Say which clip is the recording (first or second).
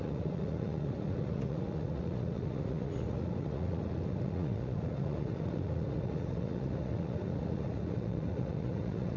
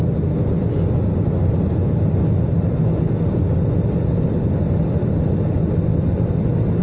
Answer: second